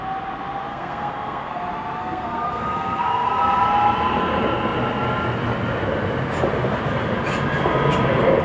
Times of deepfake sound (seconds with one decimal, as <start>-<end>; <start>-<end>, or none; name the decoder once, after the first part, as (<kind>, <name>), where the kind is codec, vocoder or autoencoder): 0.7-1.6 (codec, SNAC); 2.0-3.4